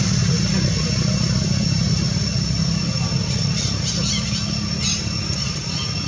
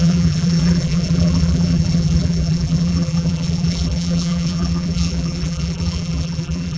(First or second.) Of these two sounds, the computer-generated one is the second